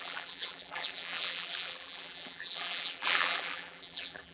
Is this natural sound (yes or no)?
no